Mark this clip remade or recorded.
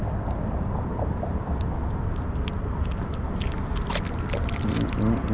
recorded